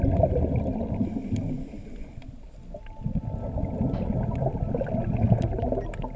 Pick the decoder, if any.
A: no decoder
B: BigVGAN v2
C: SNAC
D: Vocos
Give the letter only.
A